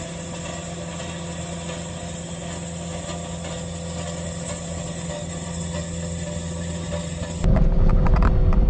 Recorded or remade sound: recorded